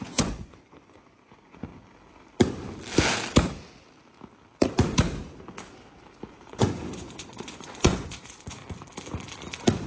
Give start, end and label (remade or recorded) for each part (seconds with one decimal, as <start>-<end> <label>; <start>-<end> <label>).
0.0-1.7 remade; 1.7-6.3 recorded; 6.3-8.6 remade; 8.6-9.9 recorded